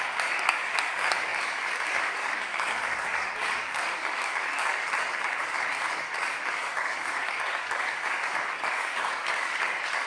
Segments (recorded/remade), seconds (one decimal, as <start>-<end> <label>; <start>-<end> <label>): 0.0-10.1 remade

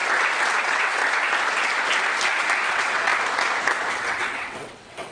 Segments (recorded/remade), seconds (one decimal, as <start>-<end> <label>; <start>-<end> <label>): 0.0-0.6 recorded; 0.6-1.0 remade; 1.0-2.7 recorded; 2.7-3.1 remade; 3.1-3.9 recorded; 3.9-5.1 remade